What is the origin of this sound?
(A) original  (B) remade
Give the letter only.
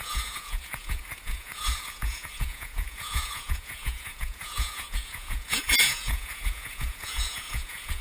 B